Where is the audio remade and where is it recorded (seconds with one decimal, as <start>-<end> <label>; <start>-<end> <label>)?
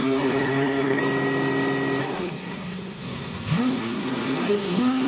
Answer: 0.0-1.0 remade; 1.0-2.0 recorded; 2.0-5.1 remade